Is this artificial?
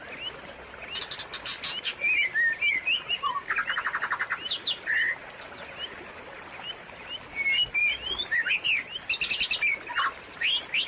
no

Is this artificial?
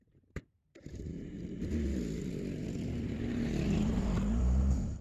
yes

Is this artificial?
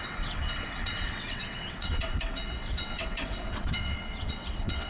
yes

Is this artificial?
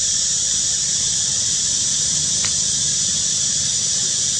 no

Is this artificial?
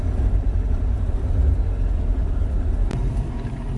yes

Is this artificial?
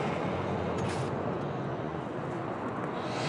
yes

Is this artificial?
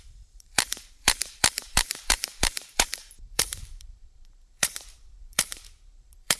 yes